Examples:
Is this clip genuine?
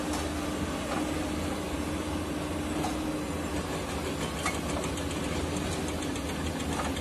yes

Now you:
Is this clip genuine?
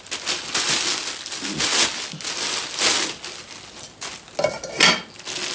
yes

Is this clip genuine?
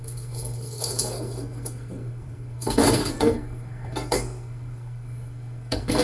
no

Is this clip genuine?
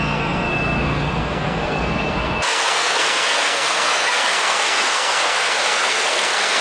no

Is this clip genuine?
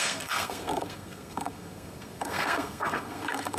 no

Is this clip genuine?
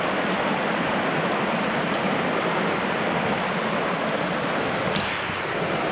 yes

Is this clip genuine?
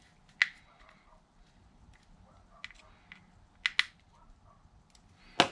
yes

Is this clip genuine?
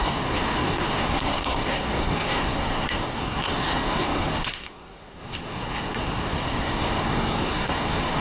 no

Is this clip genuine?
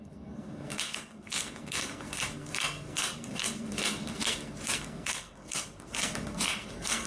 no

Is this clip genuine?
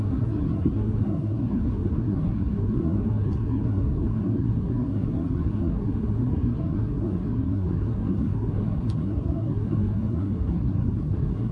no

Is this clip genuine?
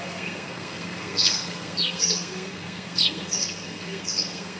no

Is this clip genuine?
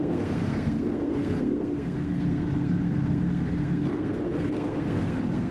no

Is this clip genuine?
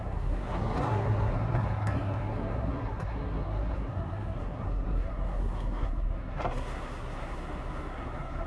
no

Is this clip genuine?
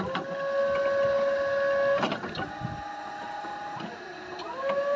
yes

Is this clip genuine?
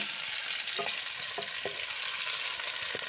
yes